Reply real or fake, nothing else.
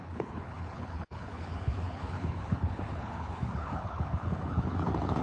fake